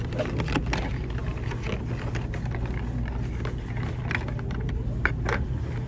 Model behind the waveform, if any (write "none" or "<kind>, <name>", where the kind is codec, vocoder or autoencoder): none